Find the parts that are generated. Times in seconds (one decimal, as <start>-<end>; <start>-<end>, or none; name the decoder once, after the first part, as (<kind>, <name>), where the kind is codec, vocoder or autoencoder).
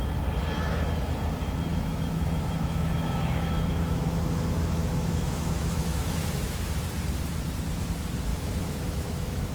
1.7-6.6 (autoencoder, DAC-VAE); 8.3-9.5